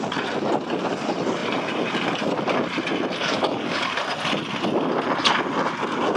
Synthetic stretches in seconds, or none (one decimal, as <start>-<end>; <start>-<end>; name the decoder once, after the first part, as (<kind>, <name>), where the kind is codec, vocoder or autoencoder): 3.2-3.9 (codec, DAC)